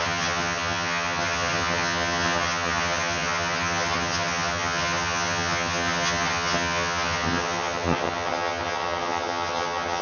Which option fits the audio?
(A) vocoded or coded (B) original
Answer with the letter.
A